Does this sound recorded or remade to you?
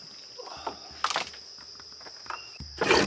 recorded